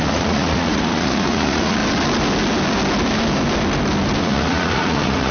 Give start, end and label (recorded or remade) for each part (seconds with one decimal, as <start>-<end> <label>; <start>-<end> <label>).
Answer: 0.0-1.8 remade; 1.8-4.2 recorded; 4.2-5.3 remade